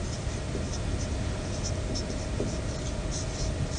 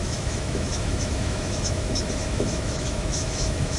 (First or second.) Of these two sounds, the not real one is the second